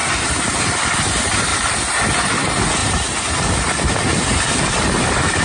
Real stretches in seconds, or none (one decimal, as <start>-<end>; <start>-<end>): 0.0-1.5; 2.3-5.4